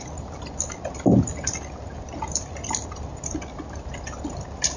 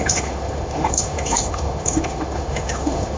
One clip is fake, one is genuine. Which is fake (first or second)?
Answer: second